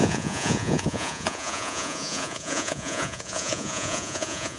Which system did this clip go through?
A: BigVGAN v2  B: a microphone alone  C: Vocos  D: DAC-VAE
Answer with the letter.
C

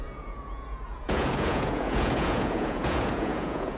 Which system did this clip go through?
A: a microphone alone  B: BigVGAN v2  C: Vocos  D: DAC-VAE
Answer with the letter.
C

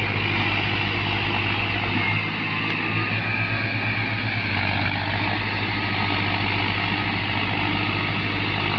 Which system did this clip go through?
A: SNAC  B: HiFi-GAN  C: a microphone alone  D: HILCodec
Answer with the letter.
C